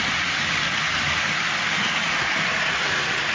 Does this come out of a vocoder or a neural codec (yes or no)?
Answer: no